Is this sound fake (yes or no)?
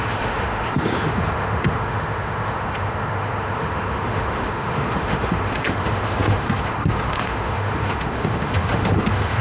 yes